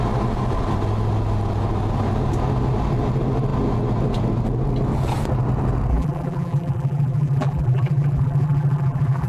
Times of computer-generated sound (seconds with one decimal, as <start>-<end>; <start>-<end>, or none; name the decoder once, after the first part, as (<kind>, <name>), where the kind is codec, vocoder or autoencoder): 5.9-9.3 (vocoder, BigVGAN v2)